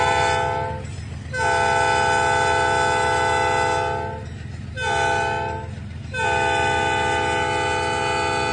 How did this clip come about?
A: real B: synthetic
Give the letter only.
A